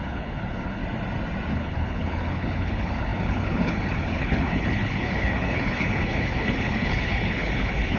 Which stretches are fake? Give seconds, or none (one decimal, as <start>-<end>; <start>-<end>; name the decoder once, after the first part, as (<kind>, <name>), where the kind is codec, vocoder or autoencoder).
0.0-0.8 (codec, HILCodec); 1.5-8.0